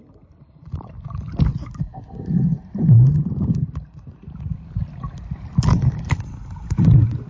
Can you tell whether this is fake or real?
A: real